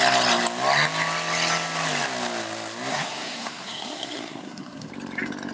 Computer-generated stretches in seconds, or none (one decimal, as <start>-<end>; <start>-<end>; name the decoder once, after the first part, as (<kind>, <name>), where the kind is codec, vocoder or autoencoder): 2.9-4.9 (codec, SNAC)